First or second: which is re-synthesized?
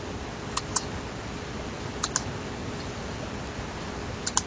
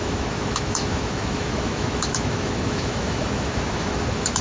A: second